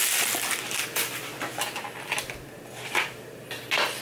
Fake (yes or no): no